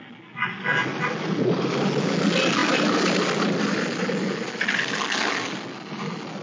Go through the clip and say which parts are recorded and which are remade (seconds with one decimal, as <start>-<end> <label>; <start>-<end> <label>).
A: 0.0-2.6 recorded; 2.6-3.6 remade; 3.6-6.4 recorded